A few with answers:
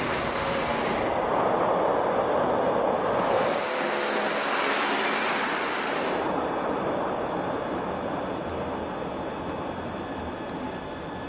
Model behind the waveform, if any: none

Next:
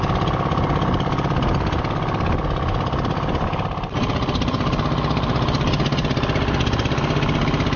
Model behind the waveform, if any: none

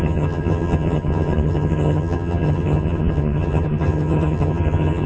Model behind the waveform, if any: vocoder, HiFi-GAN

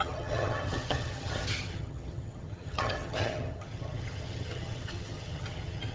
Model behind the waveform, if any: vocoder, HiFi-GAN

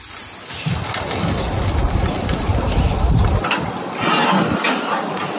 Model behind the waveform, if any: none